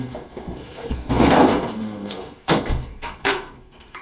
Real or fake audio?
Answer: fake